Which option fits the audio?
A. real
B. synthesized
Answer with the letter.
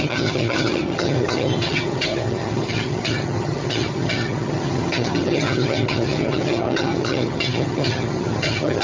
B